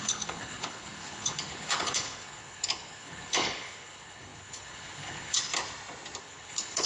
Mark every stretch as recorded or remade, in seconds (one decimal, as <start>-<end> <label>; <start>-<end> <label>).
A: 0.0-5.5 remade; 5.5-6.2 recorded; 6.2-6.9 remade